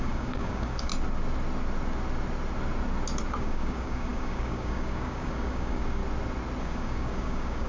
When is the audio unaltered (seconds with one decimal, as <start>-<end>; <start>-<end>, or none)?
0.9-3.4; 6.0-6.6